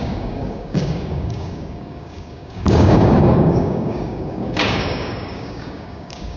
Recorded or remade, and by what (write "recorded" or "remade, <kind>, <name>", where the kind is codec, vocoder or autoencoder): remade, codec, DAC